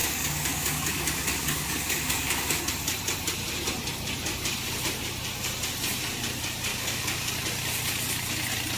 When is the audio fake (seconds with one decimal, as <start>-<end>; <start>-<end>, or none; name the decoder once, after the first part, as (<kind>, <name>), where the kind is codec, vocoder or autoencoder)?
0.0-2.6 (codec, DAC); 6.7-7.3